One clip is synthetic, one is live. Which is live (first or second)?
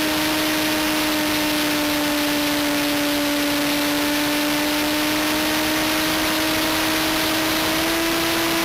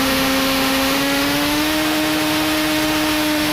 first